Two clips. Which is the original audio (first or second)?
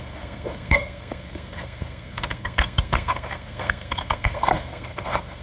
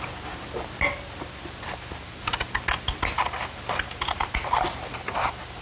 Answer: second